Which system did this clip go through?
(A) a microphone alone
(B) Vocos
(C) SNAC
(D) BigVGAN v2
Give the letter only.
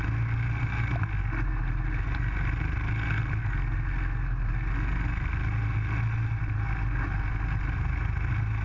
A